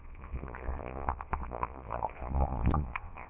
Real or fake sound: fake